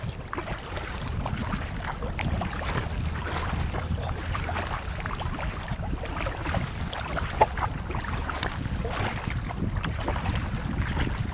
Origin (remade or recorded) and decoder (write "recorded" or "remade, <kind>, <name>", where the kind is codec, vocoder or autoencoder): recorded